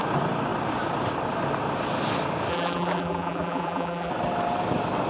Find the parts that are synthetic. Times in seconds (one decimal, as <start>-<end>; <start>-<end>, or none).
2.5-4.1